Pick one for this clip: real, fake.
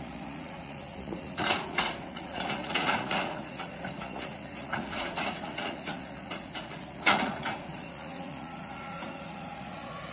fake